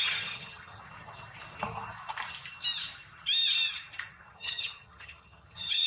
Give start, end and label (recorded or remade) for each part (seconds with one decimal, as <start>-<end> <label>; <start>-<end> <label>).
0.0-0.8 remade; 0.8-4.3 recorded; 4.3-5.9 remade